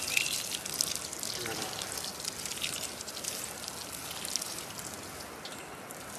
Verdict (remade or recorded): recorded